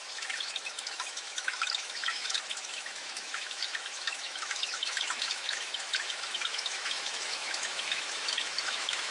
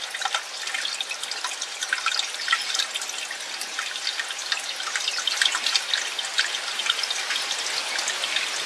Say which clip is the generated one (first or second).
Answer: first